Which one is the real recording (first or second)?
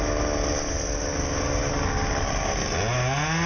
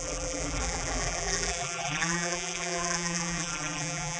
first